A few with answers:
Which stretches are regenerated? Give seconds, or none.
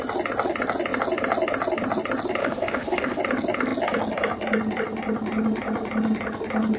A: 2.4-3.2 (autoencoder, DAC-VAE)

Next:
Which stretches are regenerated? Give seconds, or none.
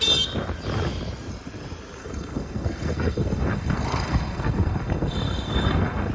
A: 2.0-6.1 (codec, SNAC)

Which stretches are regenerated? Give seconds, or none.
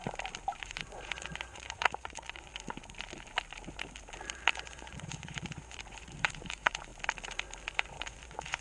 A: 0.6-2.5 (vocoder, Vocos); 4.5-6.9; 7.7-8.6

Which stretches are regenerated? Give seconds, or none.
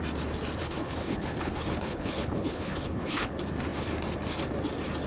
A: 0.6-3.3 (codec, HILCodec)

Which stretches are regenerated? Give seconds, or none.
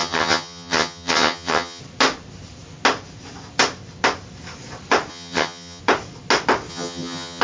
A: 0.0-1.8 (vocoder, HiFi-GAN); 5.1-5.8; 6.7-7.4